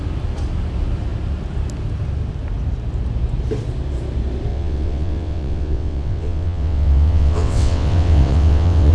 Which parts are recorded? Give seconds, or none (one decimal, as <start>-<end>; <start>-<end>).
0.0-4.5